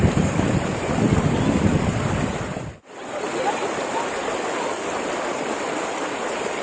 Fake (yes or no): no